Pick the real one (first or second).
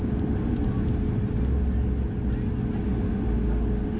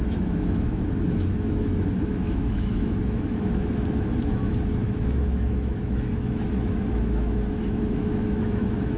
first